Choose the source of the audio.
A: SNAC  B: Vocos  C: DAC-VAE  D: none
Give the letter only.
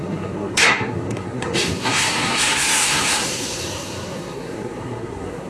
A